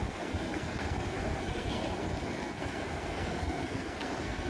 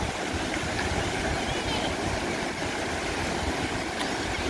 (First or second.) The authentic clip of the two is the second